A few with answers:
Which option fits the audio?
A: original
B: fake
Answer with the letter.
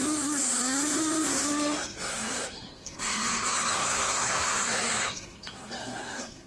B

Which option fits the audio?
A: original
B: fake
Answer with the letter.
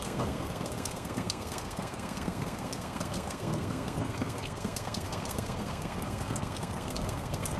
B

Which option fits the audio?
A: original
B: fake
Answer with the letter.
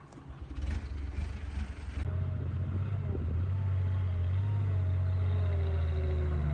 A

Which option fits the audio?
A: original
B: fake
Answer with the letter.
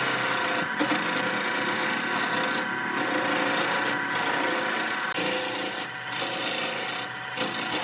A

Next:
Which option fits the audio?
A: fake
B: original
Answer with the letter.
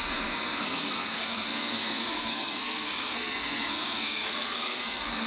A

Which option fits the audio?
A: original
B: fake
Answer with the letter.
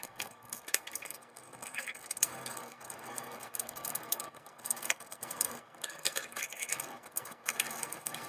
B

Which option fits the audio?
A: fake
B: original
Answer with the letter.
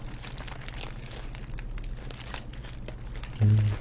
B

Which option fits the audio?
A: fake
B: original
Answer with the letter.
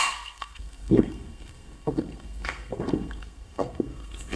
A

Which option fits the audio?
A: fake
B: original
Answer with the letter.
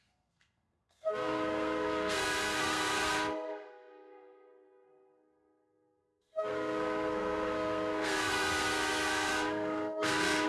A